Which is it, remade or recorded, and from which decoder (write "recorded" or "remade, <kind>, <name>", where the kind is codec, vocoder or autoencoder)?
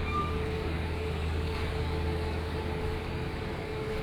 remade, codec, DAC